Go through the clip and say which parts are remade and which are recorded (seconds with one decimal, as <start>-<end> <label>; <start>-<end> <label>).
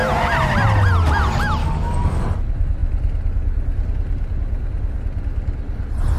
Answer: 0.0-1.6 recorded; 1.6-2.2 remade; 2.2-6.2 recorded